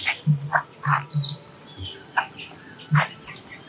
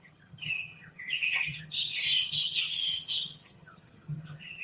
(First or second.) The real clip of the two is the first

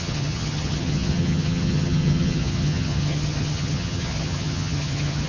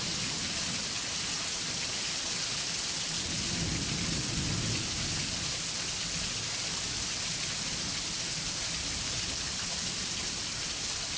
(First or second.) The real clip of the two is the second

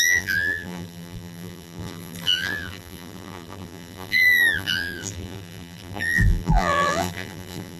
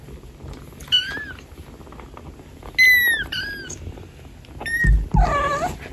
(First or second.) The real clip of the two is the second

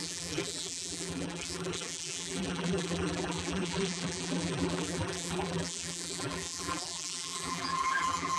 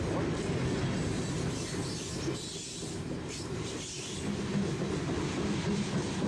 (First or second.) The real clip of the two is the second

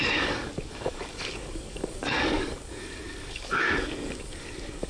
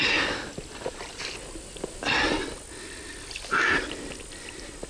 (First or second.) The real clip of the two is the second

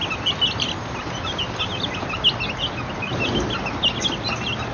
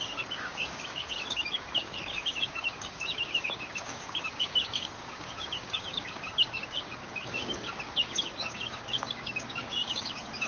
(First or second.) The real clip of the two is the first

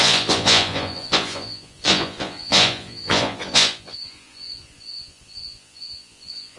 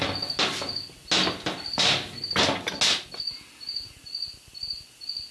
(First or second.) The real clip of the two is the second